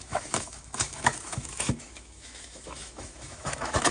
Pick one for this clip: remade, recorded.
remade